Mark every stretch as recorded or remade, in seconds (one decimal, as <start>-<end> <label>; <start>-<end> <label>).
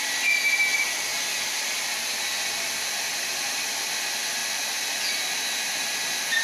0.0-6.4 remade